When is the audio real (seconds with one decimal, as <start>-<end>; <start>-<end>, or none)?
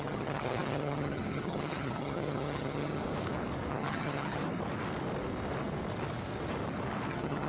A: 3.0-3.7; 4.4-7.1